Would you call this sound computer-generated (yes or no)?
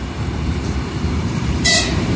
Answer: yes